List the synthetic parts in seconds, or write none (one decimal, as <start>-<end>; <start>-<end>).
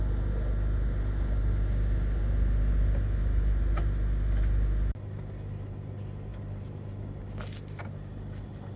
none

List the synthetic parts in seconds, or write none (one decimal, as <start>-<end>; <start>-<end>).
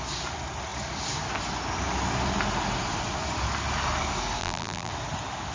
4.4-4.9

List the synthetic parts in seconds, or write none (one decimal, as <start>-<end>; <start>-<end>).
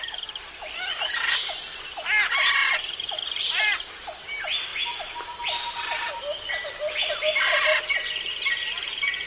none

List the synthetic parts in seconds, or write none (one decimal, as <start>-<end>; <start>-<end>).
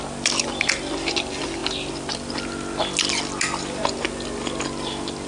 none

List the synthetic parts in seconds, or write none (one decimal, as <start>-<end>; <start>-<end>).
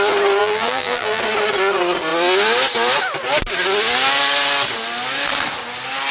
0.4-1.2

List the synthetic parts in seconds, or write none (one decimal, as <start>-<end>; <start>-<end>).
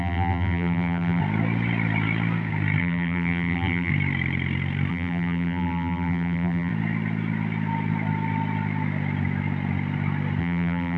0.0-1.2; 2.8-3.9; 4.9-6.7; 10.4-11.0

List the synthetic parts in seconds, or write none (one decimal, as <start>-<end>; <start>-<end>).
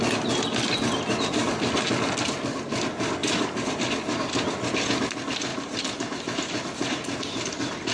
3.2-3.8; 5.5-7.5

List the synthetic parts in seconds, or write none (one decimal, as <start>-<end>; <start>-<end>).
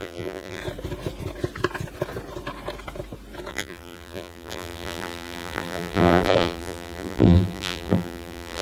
0.0-0.6; 3.5-8.6